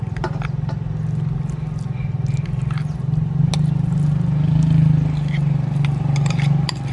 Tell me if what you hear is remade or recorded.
recorded